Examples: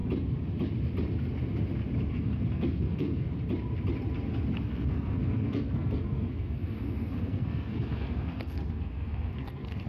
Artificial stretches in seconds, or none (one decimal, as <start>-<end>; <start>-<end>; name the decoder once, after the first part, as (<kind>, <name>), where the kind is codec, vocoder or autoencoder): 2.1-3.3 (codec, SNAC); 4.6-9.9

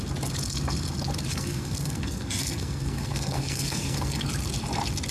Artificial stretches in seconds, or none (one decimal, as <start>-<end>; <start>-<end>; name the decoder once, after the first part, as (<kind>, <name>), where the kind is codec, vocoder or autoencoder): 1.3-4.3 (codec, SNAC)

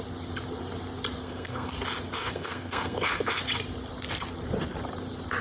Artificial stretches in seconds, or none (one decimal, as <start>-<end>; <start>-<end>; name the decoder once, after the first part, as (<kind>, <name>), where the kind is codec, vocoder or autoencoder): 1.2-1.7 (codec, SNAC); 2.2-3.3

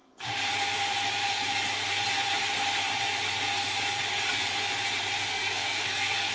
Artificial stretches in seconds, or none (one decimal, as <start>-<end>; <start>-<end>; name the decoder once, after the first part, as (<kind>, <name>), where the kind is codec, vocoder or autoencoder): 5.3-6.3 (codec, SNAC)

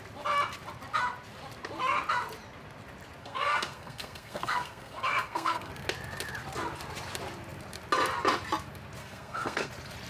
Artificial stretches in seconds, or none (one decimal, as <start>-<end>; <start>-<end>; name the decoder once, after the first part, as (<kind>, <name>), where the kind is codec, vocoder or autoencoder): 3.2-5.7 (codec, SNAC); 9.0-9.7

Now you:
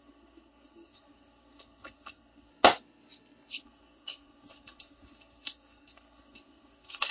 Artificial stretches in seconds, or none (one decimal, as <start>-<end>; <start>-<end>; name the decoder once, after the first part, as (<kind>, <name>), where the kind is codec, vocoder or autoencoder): 0.0-2.5 (codec, SNAC); 3.5-7.1

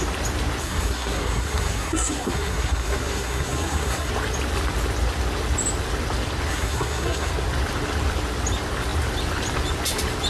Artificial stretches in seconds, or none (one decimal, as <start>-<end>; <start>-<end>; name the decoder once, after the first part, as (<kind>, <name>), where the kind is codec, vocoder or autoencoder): 0.6-4.1 (codec, SNAC); 6.5-7.3

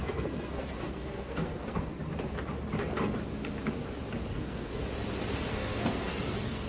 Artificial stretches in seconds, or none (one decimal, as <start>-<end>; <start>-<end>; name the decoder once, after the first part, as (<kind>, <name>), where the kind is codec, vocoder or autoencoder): 0.0-2.1 (codec, SNAC); 4.3-4.8; 5.5-6.7